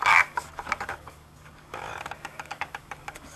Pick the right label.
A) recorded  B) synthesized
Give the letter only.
B